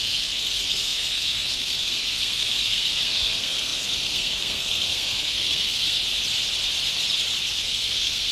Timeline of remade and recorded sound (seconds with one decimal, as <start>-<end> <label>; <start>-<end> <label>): 0.0-6.0 remade; 6.0-7.6 recorded; 7.6-8.3 remade